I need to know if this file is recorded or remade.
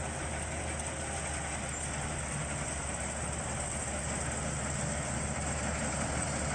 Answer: recorded